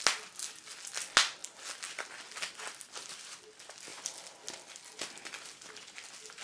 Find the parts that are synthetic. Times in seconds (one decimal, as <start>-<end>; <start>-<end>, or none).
none